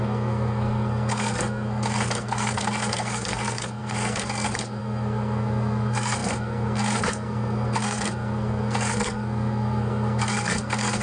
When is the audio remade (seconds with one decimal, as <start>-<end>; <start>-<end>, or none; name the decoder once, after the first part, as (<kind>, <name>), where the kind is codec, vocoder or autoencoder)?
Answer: 0.0-11.0 (codec, SNAC)